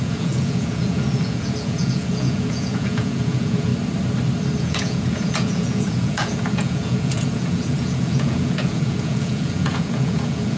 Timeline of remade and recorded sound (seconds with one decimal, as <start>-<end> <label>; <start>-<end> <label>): 0.0-3.7 remade; 3.7-4.6 recorded; 4.6-10.6 remade